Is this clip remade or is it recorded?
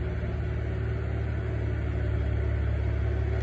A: recorded